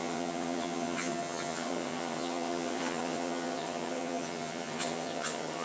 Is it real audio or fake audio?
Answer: fake